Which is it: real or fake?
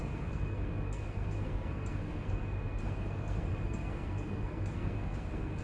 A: fake